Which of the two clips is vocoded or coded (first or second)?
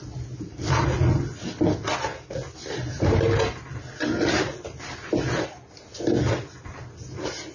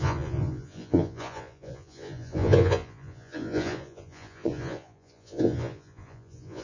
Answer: second